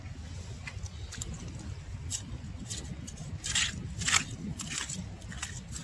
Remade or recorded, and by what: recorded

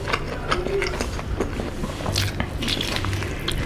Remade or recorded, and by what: recorded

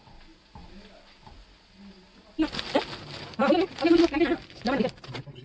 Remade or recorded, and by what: recorded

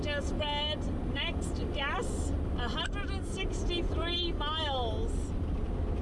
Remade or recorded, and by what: recorded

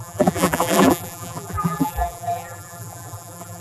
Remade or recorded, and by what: remade, vocoder, BigVGAN v2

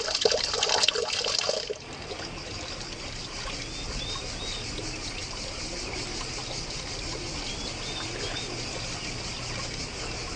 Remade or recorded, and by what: remade, vocoder, BigVGAN v2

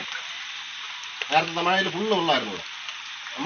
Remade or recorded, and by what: recorded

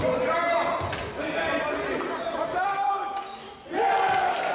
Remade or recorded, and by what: recorded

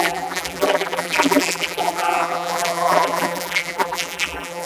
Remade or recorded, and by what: remade, vocoder, BigVGAN v2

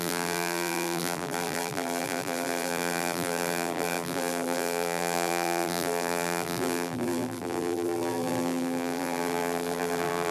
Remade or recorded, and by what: remade, vocoder, BigVGAN v2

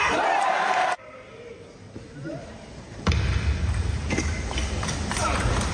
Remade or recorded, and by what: remade, vocoder, BigVGAN v2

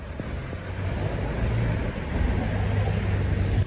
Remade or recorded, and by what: recorded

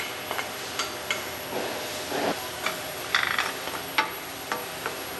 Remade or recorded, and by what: recorded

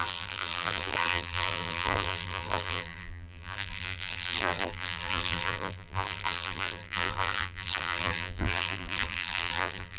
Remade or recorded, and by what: remade, vocoder, BigVGAN v2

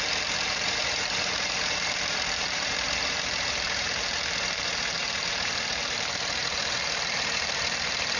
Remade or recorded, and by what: remade, vocoder, BigVGAN v2